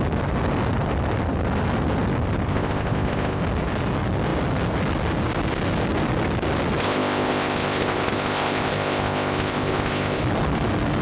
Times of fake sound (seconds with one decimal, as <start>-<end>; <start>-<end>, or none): 2.5-3.4; 6.8-10.2